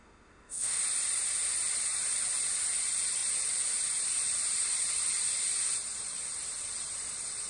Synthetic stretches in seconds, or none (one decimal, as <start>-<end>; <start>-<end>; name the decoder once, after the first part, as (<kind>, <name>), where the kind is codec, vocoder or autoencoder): 0.0-0.8 (autoencoder, DAC-VAE)